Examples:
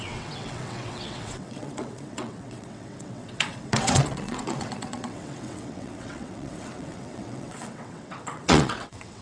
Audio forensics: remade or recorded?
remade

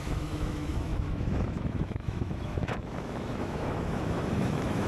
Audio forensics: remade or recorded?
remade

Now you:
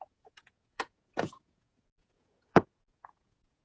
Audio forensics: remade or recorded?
remade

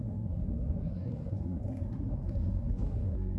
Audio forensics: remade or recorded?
remade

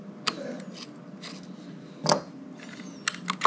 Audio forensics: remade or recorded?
recorded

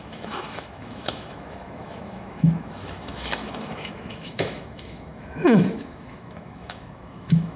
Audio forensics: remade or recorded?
remade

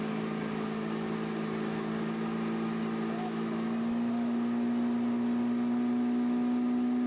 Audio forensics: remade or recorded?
recorded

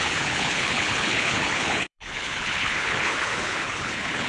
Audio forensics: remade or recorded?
remade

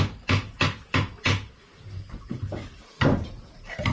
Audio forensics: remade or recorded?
recorded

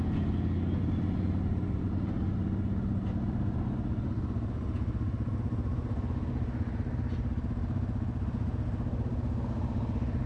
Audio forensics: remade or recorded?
recorded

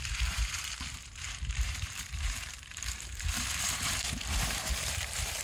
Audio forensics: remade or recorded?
remade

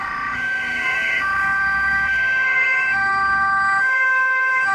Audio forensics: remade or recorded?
remade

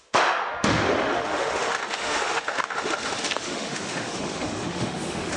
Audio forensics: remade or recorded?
remade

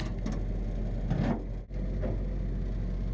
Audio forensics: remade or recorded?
recorded